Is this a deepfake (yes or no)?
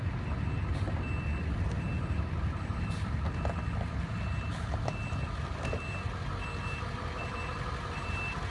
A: no